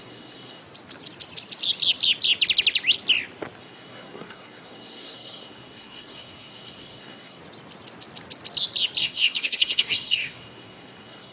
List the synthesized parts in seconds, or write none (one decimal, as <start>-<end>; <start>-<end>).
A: 0.0-0.6; 3.6-7.4; 9.0-11.3